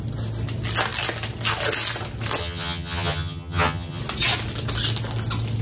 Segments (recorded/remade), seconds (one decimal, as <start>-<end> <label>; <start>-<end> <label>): 0.0-2.4 recorded; 2.4-4.0 remade; 4.0-5.6 recorded